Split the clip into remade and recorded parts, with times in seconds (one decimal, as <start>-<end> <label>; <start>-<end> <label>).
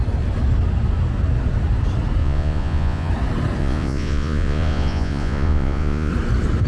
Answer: 0.0-2.2 recorded; 2.2-3.1 remade; 3.1-3.6 recorded; 3.6-6.1 remade; 6.1-6.7 recorded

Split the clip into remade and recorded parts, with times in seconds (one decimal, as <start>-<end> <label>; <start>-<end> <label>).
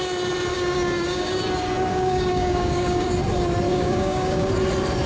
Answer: 0.0-0.5 recorded; 0.5-1.4 remade; 1.4-1.9 recorded; 1.9-3.1 remade; 3.1-3.7 recorded; 3.7-4.5 remade; 4.5-5.1 recorded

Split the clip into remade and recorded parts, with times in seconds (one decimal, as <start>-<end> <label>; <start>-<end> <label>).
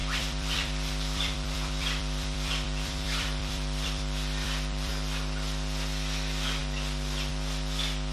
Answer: 0.0-4.9 remade; 4.9-8.1 recorded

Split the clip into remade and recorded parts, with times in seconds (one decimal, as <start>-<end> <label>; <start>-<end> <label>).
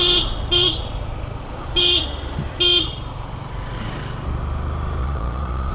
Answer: 0.0-5.0 recorded; 5.0-5.7 remade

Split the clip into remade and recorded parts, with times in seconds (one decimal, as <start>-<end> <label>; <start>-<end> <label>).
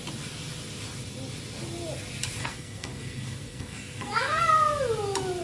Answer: 0.0-2.4 recorded; 2.4-4.4 remade; 4.4-5.4 recorded